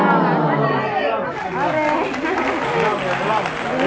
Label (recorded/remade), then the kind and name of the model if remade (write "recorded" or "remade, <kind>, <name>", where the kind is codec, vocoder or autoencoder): recorded